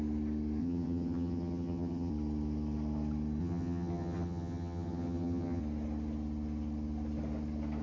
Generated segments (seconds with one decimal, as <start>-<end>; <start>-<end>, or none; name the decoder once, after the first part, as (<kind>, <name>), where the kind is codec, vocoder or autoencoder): 0.6-2.1 (vocoder, HiFi-GAN); 3.4-5.6